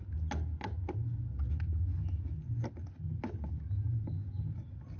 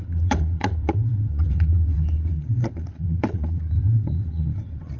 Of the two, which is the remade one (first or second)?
second